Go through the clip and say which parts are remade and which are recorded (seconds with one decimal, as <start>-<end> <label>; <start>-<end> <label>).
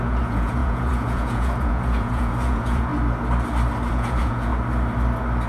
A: 0.0-2.9 remade; 2.9-3.9 recorded; 3.9-4.5 remade; 4.5-5.5 recorded